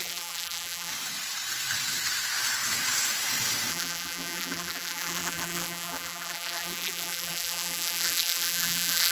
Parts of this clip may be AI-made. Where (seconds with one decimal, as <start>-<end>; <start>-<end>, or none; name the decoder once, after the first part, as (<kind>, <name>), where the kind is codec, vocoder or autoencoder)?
0.0-0.9 (vocoder, BigVGAN v2); 3.7-9.1